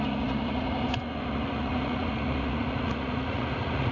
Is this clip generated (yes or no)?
yes